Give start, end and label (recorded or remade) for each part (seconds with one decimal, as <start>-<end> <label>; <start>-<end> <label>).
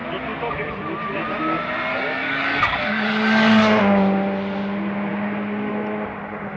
0.0-1.9 recorded; 1.9-3.8 remade; 3.8-6.6 recorded